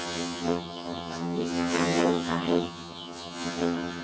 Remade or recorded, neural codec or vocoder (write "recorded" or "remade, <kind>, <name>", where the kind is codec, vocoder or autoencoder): remade, vocoder, HiFi-GAN